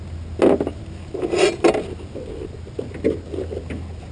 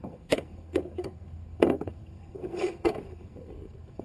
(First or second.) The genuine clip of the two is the first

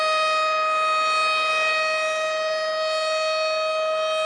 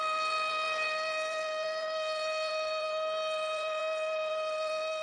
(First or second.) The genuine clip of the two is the first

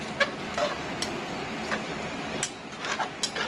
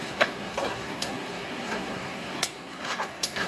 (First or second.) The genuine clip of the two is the first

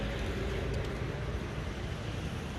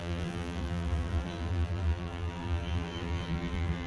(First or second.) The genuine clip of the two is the first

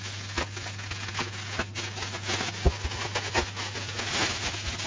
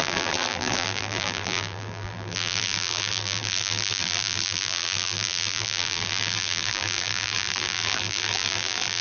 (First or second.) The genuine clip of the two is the first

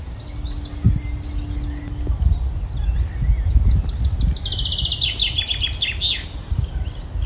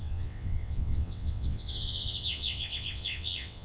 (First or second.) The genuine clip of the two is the first